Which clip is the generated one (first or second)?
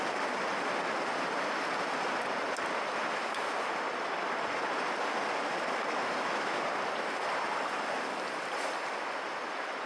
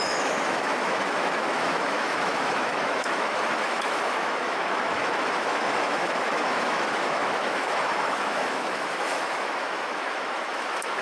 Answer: second